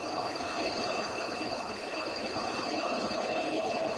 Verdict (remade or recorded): remade